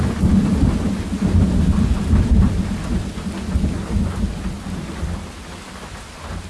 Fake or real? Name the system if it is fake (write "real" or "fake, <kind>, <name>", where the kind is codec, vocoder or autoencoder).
real